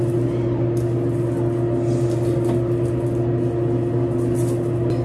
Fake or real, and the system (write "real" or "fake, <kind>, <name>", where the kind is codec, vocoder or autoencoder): real